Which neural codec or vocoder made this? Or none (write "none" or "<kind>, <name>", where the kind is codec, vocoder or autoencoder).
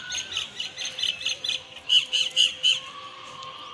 vocoder, BigVGAN v2